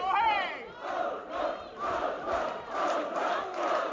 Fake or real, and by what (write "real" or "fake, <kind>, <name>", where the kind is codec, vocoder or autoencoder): fake, vocoder, BigVGAN v2